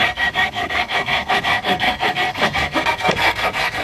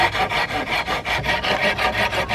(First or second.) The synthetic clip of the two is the first